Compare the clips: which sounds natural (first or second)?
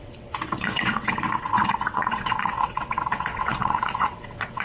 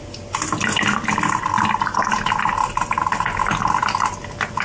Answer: second